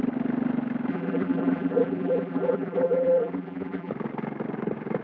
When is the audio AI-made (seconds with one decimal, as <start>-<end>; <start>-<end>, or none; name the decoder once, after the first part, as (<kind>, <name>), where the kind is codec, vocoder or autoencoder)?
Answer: 0.9-3.9 (vocoder, BigVGAN v2)